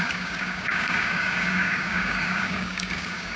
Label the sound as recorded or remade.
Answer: remade